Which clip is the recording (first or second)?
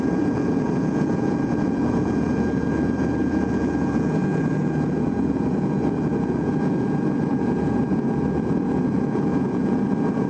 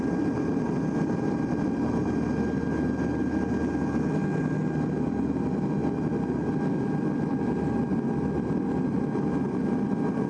second